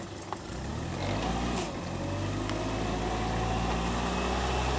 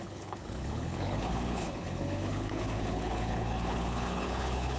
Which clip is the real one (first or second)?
first